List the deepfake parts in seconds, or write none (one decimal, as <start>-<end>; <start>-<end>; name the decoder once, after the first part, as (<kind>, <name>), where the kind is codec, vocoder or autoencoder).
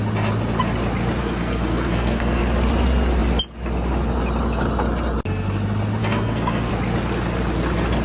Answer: 1.2-2.4 (codec, SNAC); 6.0-6.7